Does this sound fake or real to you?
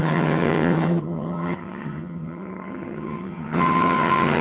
fake